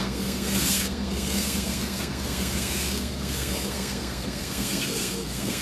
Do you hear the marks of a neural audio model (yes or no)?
yes